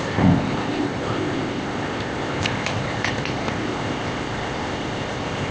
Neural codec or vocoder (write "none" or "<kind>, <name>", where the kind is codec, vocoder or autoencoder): codec, ZipCodec